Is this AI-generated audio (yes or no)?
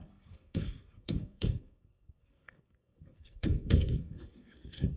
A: yes